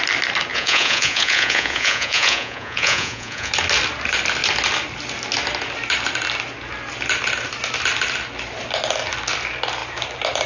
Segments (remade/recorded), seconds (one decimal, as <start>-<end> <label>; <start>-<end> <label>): 0.0-0.5 recorded; 0.5-3.5 remade; 3.5-10.5 recorded